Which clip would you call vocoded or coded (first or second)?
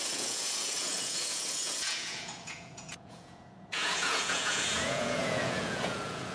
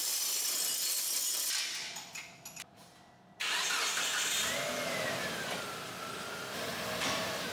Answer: first